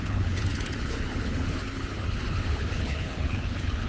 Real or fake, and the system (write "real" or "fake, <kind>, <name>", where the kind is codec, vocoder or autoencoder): fake, codec, HILCodec